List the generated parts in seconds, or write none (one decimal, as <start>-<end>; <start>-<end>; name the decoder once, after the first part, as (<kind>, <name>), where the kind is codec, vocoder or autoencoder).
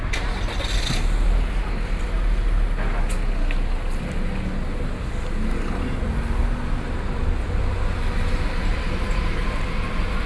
8.7-9.6 (vocoder, BigVGAN v2)